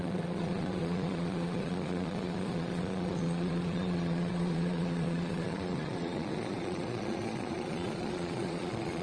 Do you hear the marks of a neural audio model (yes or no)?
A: yes